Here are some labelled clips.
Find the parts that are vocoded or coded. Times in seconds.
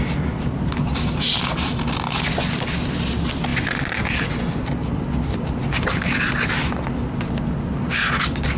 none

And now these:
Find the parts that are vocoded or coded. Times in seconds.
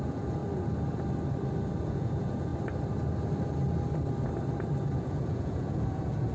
0.0-0.4 (vocoder, Vocos); 1.8-2.5; 4.9-6.3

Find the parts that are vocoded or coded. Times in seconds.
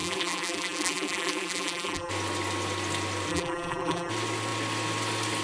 0.0-2.1 (vocoder, BigVGAN v2); 3.3-4.1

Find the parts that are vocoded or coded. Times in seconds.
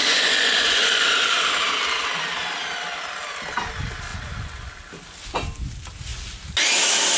0.0-1.4 (vocoder, Vocos); 4.1-4.7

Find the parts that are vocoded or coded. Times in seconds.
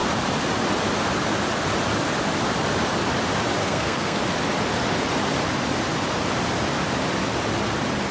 3.6-4.2 (codec, SNAC)